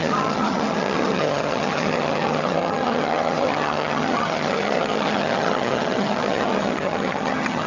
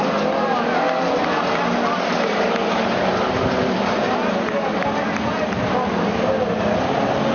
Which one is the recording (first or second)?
second